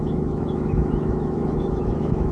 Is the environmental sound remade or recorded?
remade